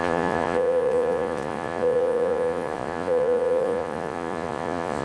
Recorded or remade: remade